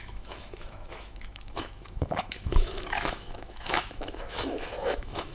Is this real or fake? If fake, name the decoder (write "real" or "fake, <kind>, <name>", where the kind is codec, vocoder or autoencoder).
fake, autoencoder, DAC-VAE